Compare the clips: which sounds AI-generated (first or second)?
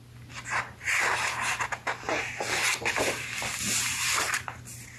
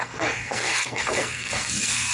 second